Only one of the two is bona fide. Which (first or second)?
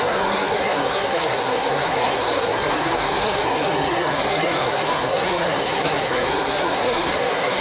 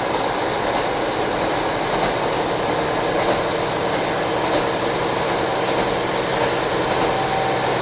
second